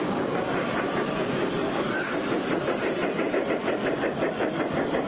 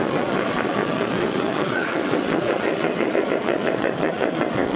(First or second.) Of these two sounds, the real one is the first